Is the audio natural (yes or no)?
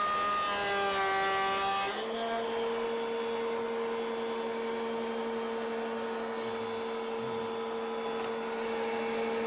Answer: yes